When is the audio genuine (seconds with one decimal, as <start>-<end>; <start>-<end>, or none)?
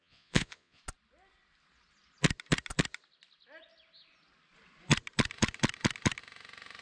0.8-6.8